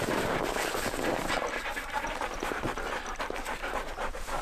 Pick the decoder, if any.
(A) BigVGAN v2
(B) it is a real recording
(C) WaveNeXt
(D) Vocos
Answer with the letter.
B